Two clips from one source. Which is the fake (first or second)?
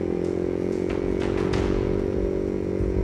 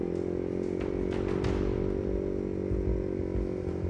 first